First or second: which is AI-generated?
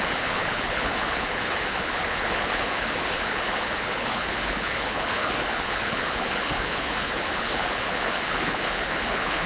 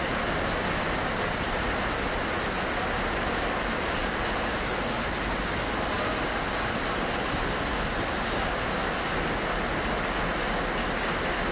first